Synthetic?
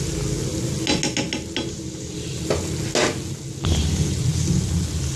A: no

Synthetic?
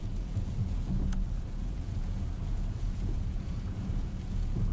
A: yes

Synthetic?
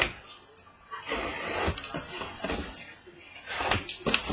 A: no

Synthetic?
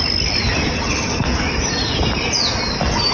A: no